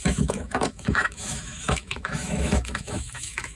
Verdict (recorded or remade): remade